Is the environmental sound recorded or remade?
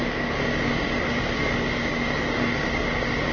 remade